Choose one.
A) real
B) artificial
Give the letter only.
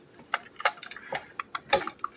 A